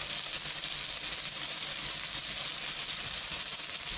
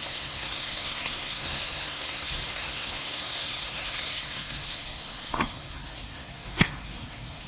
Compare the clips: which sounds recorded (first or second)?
first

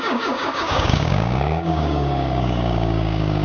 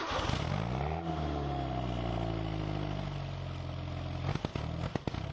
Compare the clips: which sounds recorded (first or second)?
second